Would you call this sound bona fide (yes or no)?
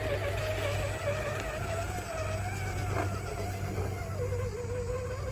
yes